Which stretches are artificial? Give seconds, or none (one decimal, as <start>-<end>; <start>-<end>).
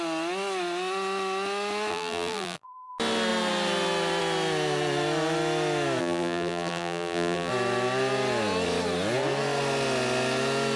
1.9-2.9; 6.0-7.5